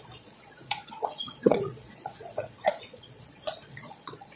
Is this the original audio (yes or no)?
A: no